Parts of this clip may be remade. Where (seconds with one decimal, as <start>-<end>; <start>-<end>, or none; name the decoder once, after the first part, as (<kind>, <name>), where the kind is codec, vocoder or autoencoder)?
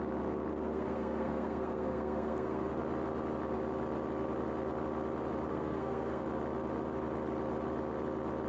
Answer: 0.5-2.7 (codec, SNAC); 5.5-6.2